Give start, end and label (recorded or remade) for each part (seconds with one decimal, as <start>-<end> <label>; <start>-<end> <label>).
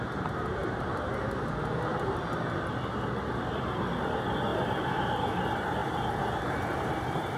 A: 0.0-0.6 recorded; 0.6-2.2 remade; 2.2-4.5 recorded; 4.5-5.1 remade; 5.1-5.8 recorded; 5.8-7.4 remade